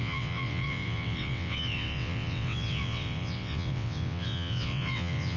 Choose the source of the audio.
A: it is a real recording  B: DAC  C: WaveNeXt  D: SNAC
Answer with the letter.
C